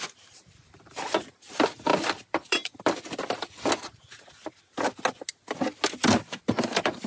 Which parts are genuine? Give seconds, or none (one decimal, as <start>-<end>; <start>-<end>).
0.0-1.9; 3.7-6.4